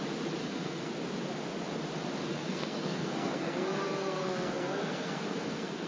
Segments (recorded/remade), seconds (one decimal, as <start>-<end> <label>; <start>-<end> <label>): 0.0-0.4 recorded; 0.4-0.9 remade; 0.9-2.3 recorded; 2.3-5.9 remade